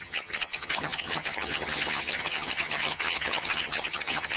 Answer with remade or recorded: remade